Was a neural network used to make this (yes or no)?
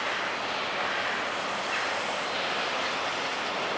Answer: no